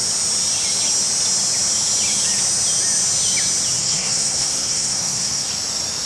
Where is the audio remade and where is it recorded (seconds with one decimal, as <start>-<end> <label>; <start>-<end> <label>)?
0.0-3.8 recorded; 3.8-5.5 remade; 5.5-6.1 recorded